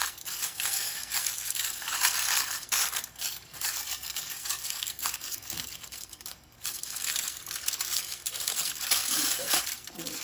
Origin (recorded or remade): remade